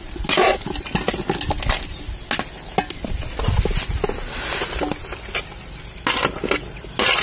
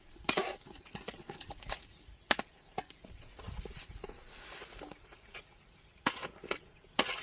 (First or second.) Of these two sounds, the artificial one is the second